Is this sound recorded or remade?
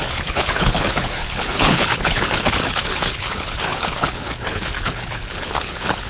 remade